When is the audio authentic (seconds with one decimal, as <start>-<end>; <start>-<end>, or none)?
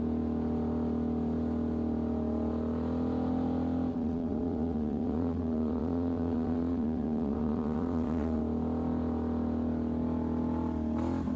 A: 0.0-3.9; 8.4-11.4